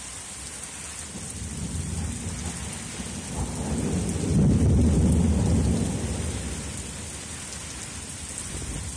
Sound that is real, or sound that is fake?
real